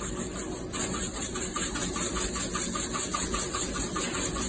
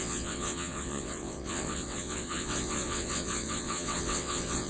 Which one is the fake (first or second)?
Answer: second